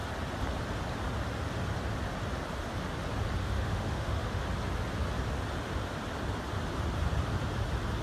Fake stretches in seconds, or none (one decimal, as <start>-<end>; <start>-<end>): 3.4-4.4